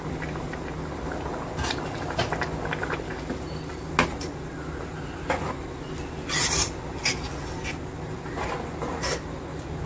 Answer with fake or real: real